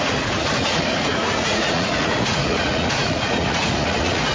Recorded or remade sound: remade